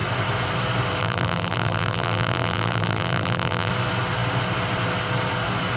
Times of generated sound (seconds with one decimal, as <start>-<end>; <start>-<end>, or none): 1.0-3.7